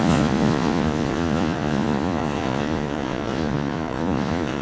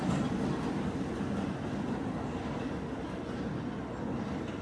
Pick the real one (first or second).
second